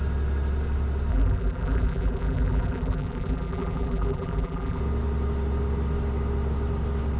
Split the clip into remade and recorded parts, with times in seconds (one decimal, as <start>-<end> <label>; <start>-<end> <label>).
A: 0.0-1.1 recorded; 1.1-4.8 remade; 4.8-7.2 recorded